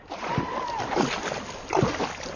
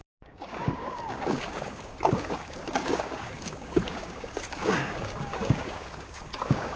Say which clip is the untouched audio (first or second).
first